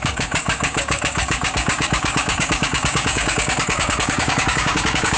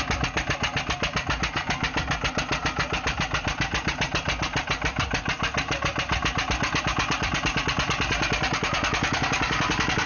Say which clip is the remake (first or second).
first